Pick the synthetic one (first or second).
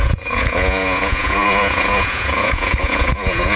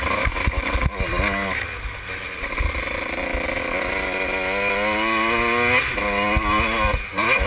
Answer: first